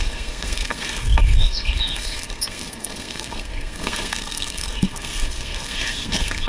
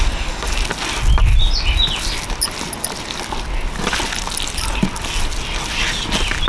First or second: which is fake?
first